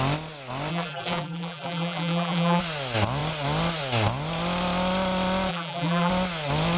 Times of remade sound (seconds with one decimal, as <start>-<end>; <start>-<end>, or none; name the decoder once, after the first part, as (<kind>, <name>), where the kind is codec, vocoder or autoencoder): 0.7-2.6 (vocoder, BigVGAN v2); 5.5-6.1